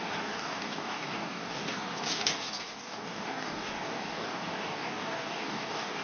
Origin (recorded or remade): remade